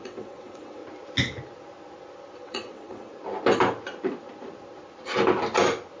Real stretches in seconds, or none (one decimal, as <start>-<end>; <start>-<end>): 0.8-2.4; 3.1-6.0